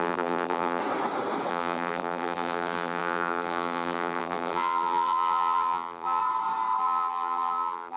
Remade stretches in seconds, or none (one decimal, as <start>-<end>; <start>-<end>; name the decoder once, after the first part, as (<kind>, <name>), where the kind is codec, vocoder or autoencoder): 0.0-0.8 (vocoder, BigVGAN v2); 1.5-6.2; 6.8-8.0